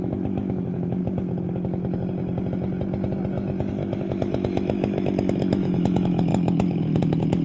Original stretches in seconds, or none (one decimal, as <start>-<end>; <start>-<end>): 1.0-3.7